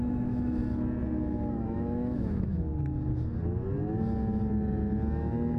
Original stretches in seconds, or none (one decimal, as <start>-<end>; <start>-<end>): 0.6-1.5; 2.7-5.6